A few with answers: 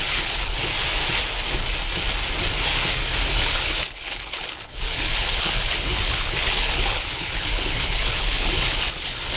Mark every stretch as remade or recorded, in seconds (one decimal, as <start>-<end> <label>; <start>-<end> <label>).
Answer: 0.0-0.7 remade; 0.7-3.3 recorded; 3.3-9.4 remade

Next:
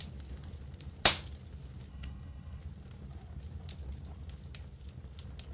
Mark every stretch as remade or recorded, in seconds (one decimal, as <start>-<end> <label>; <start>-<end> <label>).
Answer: 0.0-1.9 recorded; 1.9-2.6 remade; 2.6-5.5 recorded

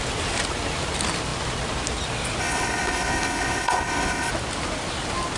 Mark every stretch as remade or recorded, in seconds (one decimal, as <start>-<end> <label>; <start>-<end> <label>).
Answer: 0.0-2.4 recorded; 2.4-4.3 remade; 4.3-5.4 recorded

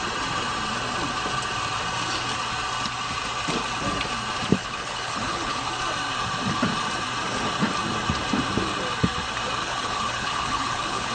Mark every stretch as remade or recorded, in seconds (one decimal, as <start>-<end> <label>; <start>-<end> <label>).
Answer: 0.0-4.5 recorded; 4.5-5.7 remade; 5.7-9.6 recorded; 9.6-11.1 remade

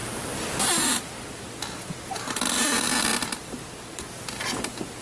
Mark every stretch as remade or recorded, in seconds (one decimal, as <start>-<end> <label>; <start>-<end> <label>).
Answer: 0.0-5.0 recorded